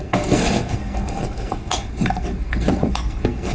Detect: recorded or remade remade